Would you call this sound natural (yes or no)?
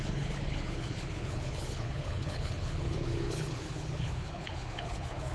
no